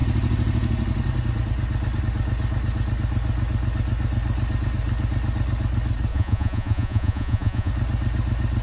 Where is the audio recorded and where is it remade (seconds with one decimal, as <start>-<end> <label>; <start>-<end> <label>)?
0.0-6.1 recorded; 6.1-7.7 remade; 7.7-8.6 recorded